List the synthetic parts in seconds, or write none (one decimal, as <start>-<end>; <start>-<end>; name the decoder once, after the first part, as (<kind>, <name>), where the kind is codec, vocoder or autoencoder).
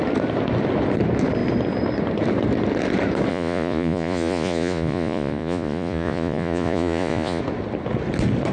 3.3-7.4 (vocoder, Vocos)